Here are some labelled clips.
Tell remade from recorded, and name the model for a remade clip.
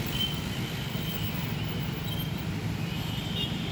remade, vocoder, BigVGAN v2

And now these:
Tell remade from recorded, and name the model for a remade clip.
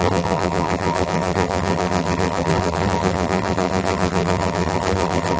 remade, vocoder, BigVGAN v2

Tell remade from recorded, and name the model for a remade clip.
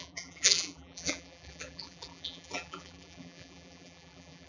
remade, vocoder, BigVGAN v2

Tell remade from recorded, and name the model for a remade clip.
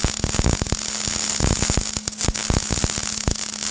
recorded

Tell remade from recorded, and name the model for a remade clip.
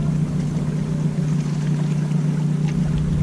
recorded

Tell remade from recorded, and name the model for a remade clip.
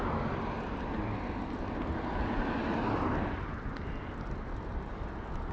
recorded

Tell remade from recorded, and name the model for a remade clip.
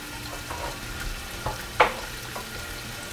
recorded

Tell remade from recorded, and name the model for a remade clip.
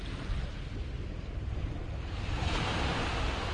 recorded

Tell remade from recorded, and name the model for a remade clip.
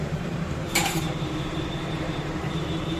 remade, vocoder, BigVGAN v2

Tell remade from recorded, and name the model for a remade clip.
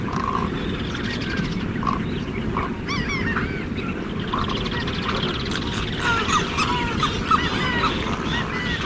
recorded